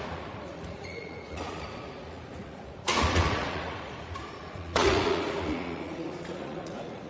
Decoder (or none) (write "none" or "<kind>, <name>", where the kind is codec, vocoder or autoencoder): vocoder, Vocos